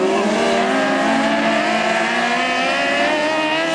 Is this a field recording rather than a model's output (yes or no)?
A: yes